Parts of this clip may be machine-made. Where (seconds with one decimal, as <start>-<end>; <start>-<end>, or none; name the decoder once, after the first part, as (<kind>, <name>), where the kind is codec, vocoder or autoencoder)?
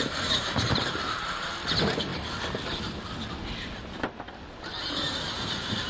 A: 0.0-2.1 (vocoder, BigVGAN v2); 4.9-5.9